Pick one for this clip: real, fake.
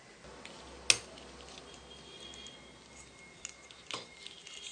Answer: real